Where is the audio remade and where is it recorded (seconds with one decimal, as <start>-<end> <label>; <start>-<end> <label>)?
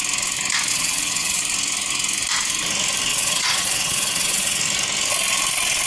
0.0-0.7 recorded; 0.7-1.4 remade; 1.4-3.1 recorded; 3.1-4.6 remade; 4.6-5.9 recorded